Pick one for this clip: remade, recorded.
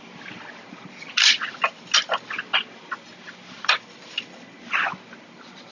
recorded